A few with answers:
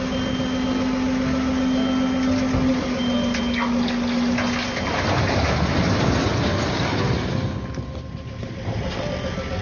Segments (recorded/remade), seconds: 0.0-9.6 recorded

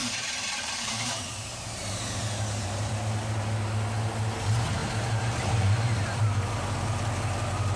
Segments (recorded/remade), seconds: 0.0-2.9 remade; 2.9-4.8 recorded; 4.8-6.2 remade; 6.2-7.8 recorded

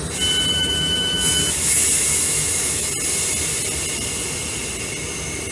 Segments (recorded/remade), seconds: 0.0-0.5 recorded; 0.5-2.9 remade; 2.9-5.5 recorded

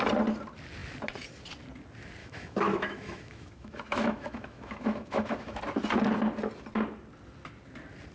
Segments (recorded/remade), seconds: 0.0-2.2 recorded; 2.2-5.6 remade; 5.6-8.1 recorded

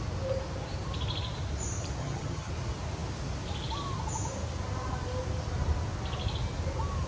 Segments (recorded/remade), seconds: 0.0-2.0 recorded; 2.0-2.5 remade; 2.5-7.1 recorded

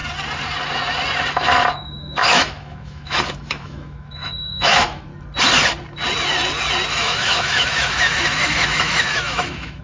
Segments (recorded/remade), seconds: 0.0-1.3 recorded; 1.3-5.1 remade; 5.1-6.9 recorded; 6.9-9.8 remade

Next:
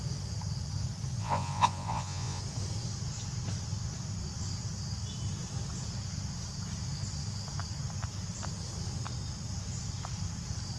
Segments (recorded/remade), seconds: 0.0-1.2 recorded; 1.2-2.4 remade; 2.4-10.8 recorded